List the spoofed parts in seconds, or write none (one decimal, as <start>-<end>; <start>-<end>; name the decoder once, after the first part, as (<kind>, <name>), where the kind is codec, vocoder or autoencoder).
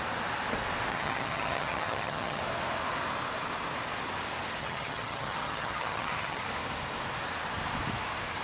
0.9-2.4 (vocoder, HiFi-GAN); 4.6-6.4